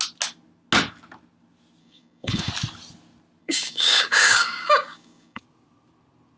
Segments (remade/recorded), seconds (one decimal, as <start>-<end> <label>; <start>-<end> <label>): 0.0-1.8 recorded; 1.8-2.5 remade; 2.5-3.4 recorded; 3.4-5.4 remade; 5.4-6.4 recorded